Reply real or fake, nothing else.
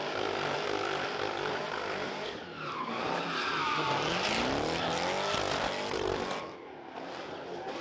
real